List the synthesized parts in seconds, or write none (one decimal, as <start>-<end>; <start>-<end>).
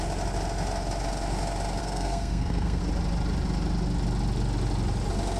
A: 1.8-2.8